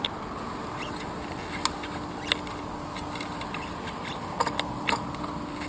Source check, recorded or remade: recorded